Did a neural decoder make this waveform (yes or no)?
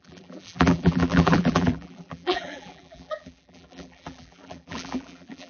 yes